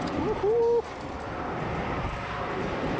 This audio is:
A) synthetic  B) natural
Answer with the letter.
B